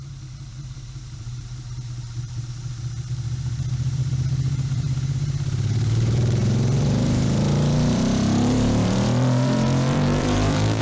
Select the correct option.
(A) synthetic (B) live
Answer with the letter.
A